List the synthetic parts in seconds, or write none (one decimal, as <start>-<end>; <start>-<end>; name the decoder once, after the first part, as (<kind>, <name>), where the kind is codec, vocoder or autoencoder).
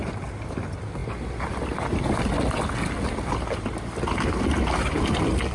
none